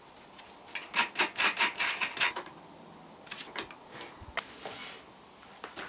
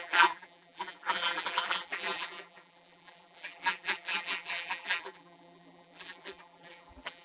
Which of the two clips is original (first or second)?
first